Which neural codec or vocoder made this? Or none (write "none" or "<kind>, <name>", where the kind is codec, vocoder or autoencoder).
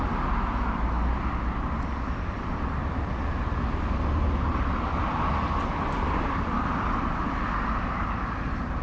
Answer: none